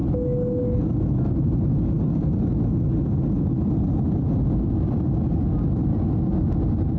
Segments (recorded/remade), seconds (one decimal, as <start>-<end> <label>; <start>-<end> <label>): 0.0-7.0 recorded